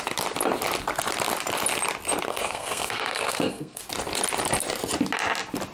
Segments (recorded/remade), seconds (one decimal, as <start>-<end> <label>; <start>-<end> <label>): 0.0-2.3 recorded; 2.3-3.8 remade; 3.8-5.7 recorded